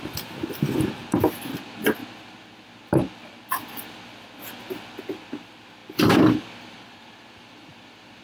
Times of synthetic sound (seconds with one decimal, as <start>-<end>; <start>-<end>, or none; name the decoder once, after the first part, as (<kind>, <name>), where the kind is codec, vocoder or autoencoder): 5.8-8.2 (vocoder, BigVGAN v2)